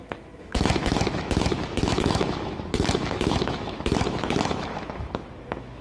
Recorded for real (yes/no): no